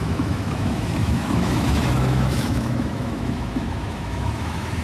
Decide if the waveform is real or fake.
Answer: fake